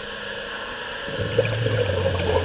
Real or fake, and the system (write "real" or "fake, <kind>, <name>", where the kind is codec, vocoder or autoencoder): real